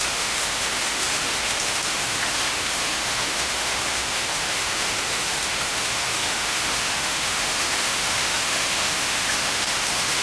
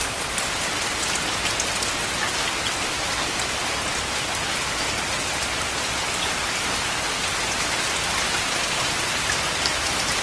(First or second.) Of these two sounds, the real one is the second